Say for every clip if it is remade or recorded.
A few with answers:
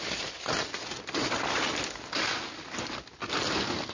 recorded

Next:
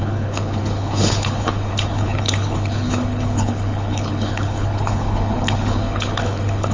remade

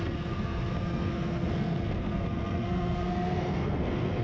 remade